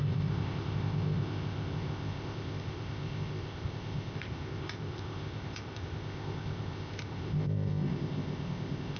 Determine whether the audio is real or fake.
fake